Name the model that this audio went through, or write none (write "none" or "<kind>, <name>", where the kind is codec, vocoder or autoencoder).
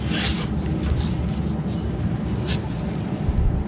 none